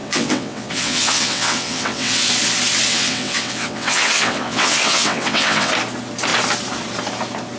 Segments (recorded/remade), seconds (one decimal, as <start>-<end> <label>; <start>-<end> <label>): 0.0-2.3 remade; 2.3-2.9 recorded; 2.9-5.7 remade; 5.7-7.6 recorded